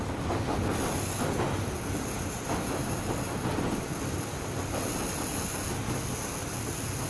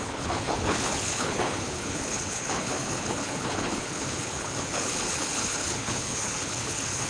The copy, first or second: second